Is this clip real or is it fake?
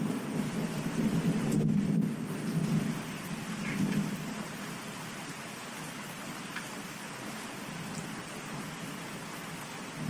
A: real